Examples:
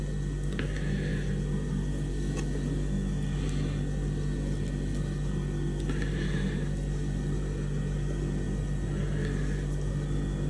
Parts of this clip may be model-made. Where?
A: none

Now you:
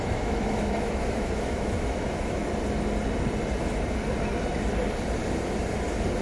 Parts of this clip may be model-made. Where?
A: 0.0-2.4 (autoencoder, DAC-VAE)